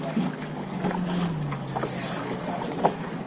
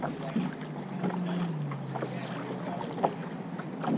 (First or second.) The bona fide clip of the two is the second